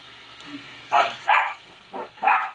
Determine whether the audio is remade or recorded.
remade